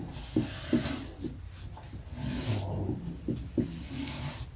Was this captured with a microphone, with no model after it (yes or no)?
yes